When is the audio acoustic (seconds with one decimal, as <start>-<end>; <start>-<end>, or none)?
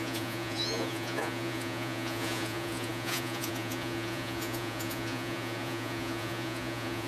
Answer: none